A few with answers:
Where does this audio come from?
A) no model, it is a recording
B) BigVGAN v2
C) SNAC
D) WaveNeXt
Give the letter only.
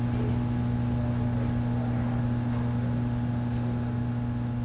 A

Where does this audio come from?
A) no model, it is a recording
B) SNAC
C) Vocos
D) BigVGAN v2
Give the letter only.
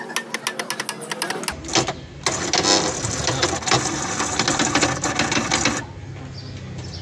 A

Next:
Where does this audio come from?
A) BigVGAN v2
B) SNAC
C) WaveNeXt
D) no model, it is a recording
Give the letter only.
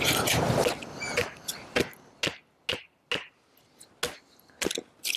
D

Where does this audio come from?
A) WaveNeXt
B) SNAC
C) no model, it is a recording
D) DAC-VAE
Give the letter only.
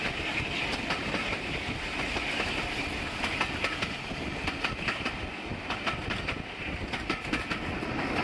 C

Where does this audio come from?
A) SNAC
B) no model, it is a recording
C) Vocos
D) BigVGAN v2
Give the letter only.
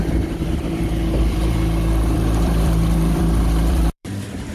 D